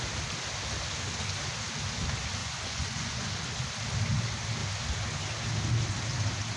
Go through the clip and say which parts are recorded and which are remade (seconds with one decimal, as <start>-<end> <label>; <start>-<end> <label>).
0.0-2.4 recorded; 2.4-3.3 remade; 3.3-6.6 recorded